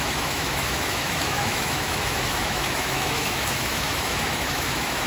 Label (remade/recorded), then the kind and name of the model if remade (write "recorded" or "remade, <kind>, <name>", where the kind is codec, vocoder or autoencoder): remade, autoencoder, DAC-VAE